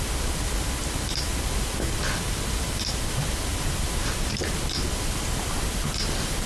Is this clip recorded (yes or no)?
yes